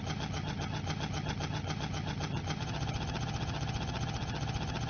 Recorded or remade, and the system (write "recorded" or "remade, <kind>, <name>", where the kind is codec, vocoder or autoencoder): remade, vocoder, HiFi-GAN